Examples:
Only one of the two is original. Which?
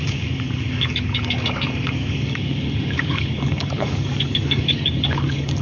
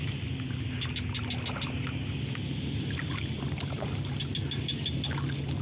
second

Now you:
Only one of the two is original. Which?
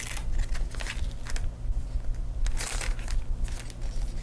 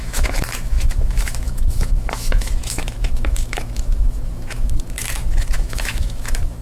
first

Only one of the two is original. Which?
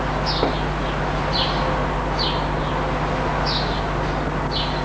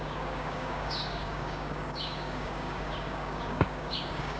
first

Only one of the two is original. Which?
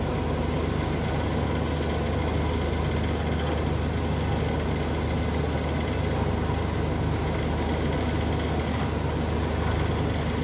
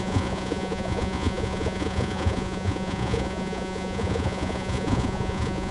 first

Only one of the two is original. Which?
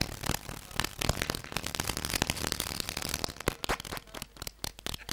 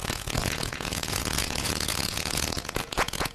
first